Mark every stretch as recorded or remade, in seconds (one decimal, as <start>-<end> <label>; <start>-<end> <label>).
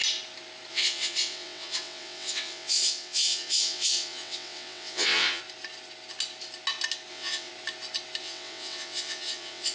0.0-0.7 recorded; 0.7-5.4 remade; 5.4-7.1 recorded; 7.1-7.5 remade; 7.5-8.2 recorded; 8.2-9.7 remade